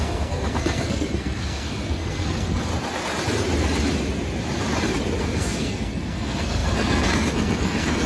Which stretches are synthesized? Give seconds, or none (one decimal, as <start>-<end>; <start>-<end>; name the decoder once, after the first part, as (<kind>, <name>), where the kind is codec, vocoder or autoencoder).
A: 0.0-2.7 (codec, SNAC); 5.2-8.1